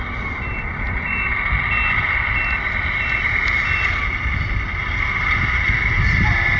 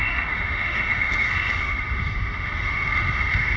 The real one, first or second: first